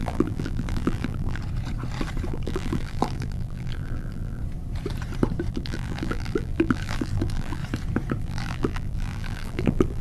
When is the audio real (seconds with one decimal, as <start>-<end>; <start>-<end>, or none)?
1.4-2.3; 4.4-5.5; 7.6-8.2